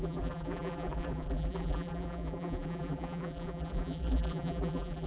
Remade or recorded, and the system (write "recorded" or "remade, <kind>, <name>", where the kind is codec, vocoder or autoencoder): remade, vocoder, BigVGAN v2